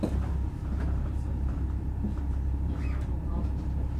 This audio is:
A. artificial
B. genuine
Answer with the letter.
A